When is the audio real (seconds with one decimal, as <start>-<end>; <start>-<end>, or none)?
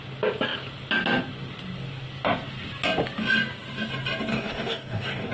0.0-4.3